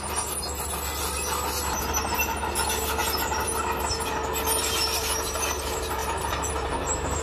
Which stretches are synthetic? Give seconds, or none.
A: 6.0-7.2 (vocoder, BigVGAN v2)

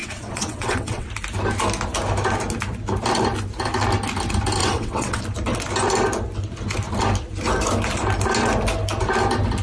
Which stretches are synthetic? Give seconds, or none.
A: 0.0-1.1 (vocoder, WaveNeXt); 4.6-5.2

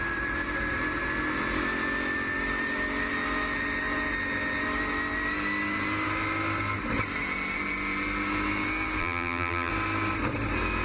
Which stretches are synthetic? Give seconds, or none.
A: 9.0-9.7 (vocoder, BigVGAN v2)

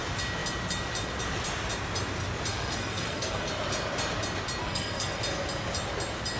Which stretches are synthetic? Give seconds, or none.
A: 2.5-3.5 (codec, SNAC); 4.6-5.2